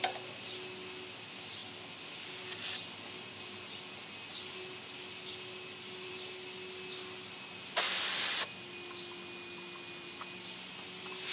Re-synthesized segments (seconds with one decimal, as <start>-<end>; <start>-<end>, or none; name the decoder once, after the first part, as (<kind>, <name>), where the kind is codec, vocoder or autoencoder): none